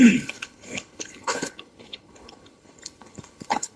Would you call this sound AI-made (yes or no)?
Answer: yes